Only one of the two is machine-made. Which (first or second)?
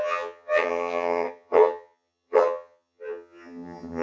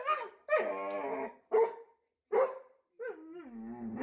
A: first